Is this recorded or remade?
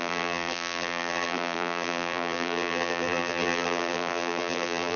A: remade